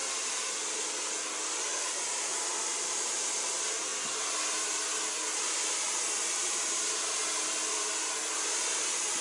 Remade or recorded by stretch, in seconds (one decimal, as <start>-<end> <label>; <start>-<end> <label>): 0.0-1.8 recorded; 1.8-3.9 remade; 3.9-6.2 recorded; 6.2-7.2 remade; 7.2-8.3 recorded; 8.3-9.2 remade